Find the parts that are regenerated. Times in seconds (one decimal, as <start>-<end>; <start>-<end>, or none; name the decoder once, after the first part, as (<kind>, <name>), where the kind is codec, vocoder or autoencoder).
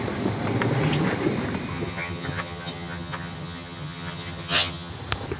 1.7-4.9 (vocoder, HiFi-GAN)